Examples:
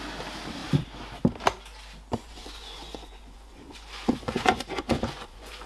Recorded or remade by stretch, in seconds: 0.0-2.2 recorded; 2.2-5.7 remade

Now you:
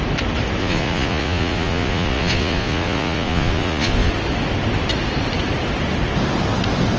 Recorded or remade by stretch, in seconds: 0.0-0.6 recorded; 0.6-4.1 remade; 4.1-7.0 recorded

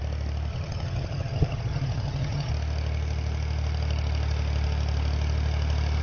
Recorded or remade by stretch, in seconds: 0.0-0.5 recorded; 0.5-2.5 remade; 2.5-6.0 recorded

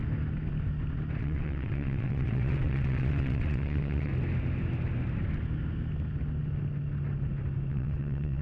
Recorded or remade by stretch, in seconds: 0.0-1.2 recorded; 1.2-4.1 remade; 4.1-7.7 recorded; 7.7-8.4 remade

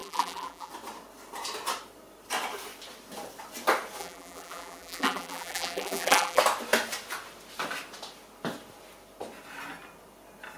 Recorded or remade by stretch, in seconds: 0.0-0.7 remade; 0.7-4.0 recorded; 4.0-6.4 remade; 6.4-10.6 recorded

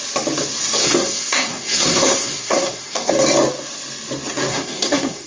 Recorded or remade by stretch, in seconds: 0.0-0.8 recorded; 0.8-3.1 remade; 3.1-4.5 recorded; 4.5-5.3 remade

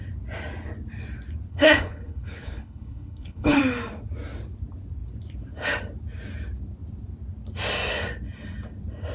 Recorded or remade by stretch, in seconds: 0.0-1.5 recorded; 1.5-3.6 remade; 3.6-9.1 recorded